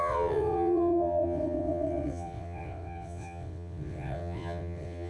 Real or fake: fake